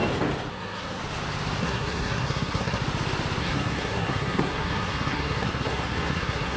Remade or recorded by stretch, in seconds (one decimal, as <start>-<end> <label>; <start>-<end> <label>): 0.0-0.5 recorded; 0.5-1.0 remade; 1.0-1.6 recorded; 1.6-2.8 remade; 2.8-3.4 recorded; 3.4-6.6 remade